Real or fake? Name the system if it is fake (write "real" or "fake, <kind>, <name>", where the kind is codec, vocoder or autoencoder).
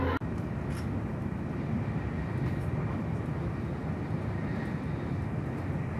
real